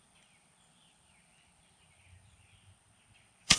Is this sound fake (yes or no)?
yes